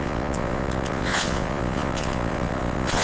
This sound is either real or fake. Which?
fake